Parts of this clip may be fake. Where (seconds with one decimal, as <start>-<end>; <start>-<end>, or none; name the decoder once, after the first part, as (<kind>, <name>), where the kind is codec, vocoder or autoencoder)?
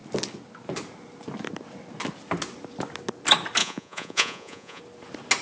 3.6-4.8 (vocoder, Vocos)